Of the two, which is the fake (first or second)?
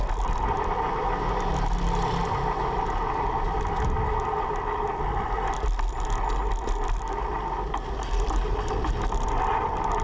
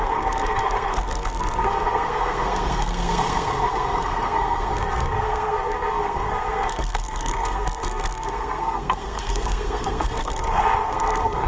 second